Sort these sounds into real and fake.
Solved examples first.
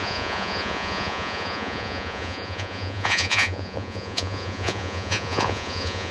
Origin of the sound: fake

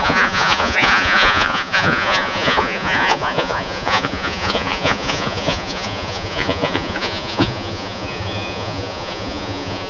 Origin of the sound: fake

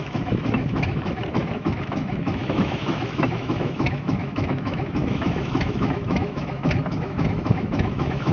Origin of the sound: fake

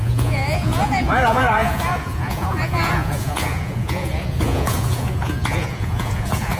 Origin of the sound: fake